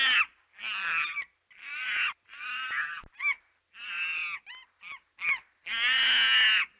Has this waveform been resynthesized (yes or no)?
no